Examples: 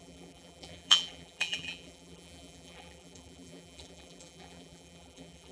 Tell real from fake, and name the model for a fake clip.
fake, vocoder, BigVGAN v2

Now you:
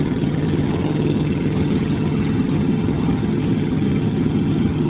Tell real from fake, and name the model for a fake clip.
fake, vocoder, HiFi-GAN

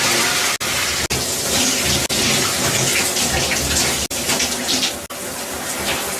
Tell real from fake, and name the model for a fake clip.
real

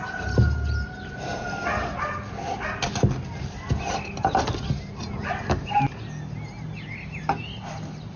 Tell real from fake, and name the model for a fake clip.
real